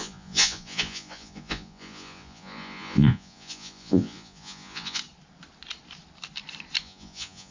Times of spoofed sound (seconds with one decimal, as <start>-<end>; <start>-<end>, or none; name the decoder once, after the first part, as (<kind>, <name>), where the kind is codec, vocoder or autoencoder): 0.0-5.0 (vocoder, Vocos); 6.8-7.5